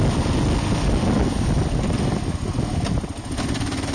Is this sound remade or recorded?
recorded